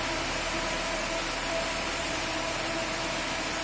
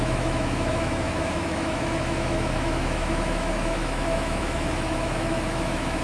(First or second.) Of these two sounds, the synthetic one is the second